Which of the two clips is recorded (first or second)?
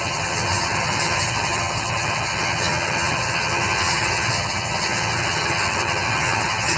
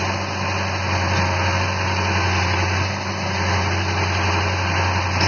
second